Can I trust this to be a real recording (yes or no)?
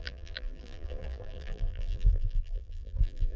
no